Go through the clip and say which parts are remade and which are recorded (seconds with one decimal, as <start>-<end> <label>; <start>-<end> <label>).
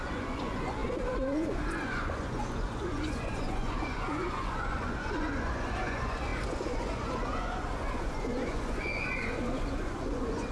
0.0-10.5 remade